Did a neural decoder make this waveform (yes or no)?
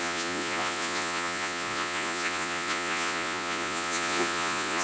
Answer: yes